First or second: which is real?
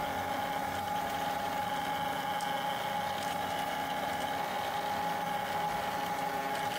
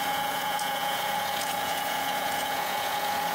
first